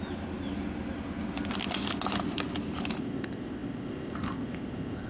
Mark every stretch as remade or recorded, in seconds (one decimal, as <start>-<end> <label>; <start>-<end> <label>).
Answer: 0.0-3.0 recorded; 3.0-5.1 remade